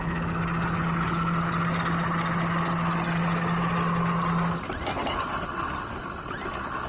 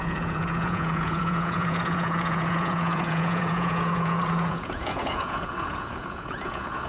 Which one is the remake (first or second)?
second